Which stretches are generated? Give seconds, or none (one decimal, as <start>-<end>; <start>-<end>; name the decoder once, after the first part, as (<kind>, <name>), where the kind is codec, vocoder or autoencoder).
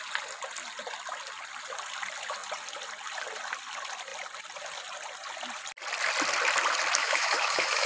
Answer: 7.0-7.9 (autoencoder, DAC-VAE)